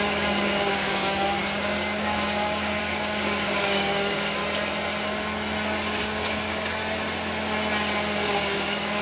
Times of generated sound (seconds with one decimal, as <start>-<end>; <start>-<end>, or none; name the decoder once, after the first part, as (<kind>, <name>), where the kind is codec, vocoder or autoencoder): 0.0-4.4 (codec, DAC); 6.0-6.8; 8.4-9.0